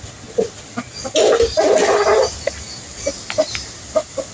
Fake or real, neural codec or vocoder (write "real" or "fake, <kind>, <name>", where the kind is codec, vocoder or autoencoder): real